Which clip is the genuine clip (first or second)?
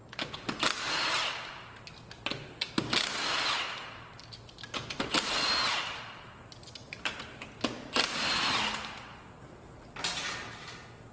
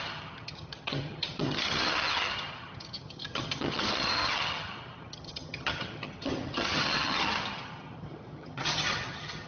first